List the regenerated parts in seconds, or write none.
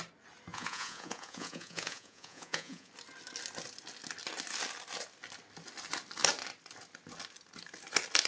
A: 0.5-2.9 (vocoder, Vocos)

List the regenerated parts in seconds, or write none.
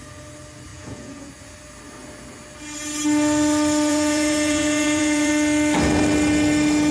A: 0.7-1.3 (vocoder, Vocos); 3.9-5.3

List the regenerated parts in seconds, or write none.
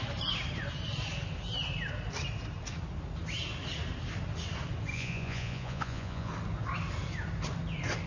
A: 4.9-6.3 (vocoder, Vocos)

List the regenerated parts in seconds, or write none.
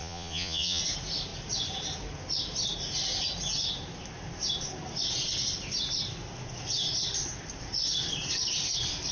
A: 0.0-0.8 (vocoder, Vocos)